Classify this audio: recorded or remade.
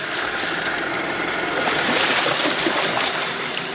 remade